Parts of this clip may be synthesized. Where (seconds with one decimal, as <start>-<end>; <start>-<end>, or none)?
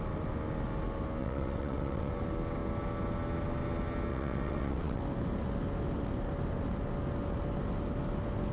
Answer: 1.2-2.1; 4.1-5.0